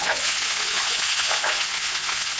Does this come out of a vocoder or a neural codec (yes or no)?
yes